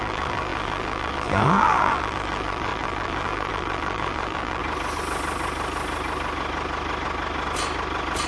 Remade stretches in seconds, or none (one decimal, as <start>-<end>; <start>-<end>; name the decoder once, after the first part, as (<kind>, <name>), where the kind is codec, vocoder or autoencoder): 0.0-4.6 (vocoder, BigVGAN v2)